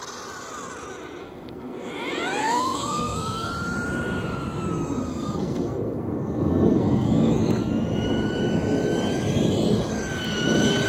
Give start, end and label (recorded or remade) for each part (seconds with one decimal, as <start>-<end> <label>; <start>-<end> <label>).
0.0-1.2 recorded; 1.2-1.9 remade; 1.9-2.4 recorded; 2.4-3.5 remade; 3.5-5.1 recorded; 5.1-7.7 remade; 7.7-10.9 recorded